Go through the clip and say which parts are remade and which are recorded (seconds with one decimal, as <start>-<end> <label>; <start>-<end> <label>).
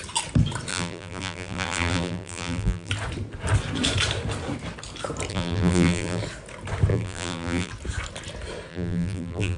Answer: 0.0-0.7 recorded; 0.7-2.9 remade; 2.9-5.3 recorded; 5.3-6.2 remade; 6.2-6.9 recorded; 6.9-7.7 remade; 7.7-8.7 recorded; 8.7-9.6 remade